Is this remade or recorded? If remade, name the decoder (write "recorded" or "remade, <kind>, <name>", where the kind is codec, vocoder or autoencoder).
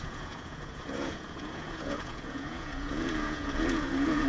remade, vocoder, Vocos